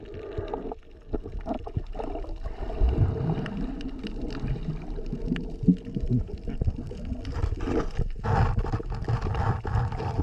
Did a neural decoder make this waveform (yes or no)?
no